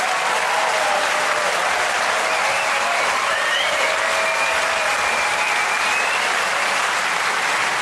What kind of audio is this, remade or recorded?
recorded